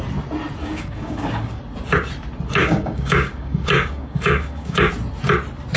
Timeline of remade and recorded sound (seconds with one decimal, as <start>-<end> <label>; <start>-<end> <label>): 0.0-0.6 recorded; 0.6-1.6 remade; 1.6-2.6 recorded; 2.6-4.9 remade; 4.9-5.8 recorded